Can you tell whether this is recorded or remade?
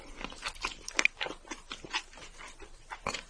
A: remade